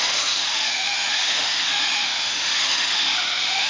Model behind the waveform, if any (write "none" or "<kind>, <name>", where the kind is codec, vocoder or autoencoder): autoencoder, DAC-VAE